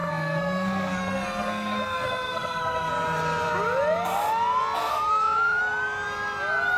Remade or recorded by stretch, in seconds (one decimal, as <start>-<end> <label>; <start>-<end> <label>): 0.0-2.9 remade; 2.9-4.9 recorded; 4.9-5.6 remade; 5.6-6.8 recorded